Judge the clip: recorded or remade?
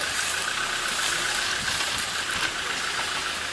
recorded